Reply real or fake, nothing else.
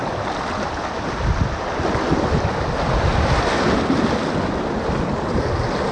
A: real